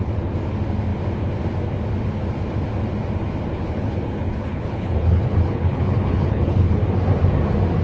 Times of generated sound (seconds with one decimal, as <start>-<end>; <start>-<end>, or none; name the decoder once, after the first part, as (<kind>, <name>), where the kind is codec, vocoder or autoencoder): 3.5-6.8 (codec, HILCodec)